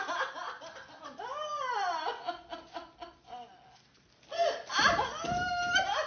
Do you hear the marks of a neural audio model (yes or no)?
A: no